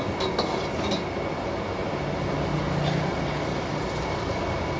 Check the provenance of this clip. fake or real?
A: real